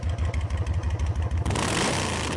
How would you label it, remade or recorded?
recorded